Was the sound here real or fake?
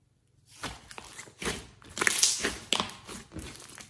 real